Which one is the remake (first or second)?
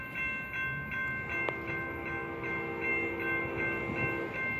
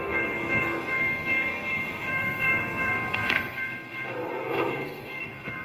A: second